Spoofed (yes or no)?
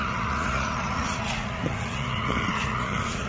yes